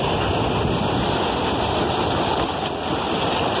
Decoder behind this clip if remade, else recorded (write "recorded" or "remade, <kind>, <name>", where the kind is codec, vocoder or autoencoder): recorded